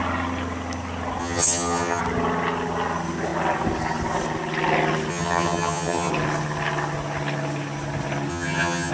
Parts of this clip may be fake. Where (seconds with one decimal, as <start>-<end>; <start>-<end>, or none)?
1.2-2.0; 5.1-6.1; 8.3-8.9